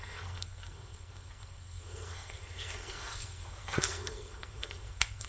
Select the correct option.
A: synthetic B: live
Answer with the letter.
A